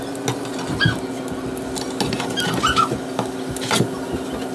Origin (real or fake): real